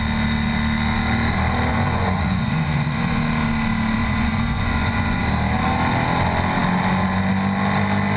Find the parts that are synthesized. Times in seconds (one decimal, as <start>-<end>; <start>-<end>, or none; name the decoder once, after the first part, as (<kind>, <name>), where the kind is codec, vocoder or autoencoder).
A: 1.7-3.2 (vocoder, Vocos); 4.0-5.2